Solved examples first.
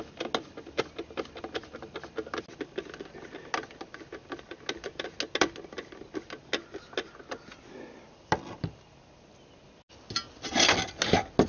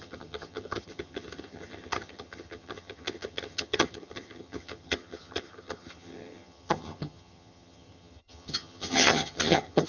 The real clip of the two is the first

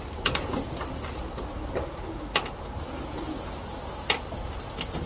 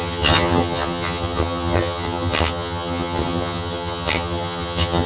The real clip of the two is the first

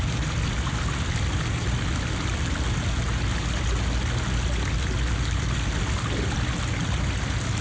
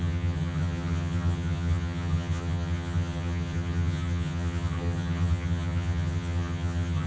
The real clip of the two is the first